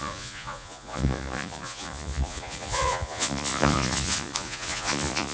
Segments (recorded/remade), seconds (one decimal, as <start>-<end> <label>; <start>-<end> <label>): 0.0-5.3 remade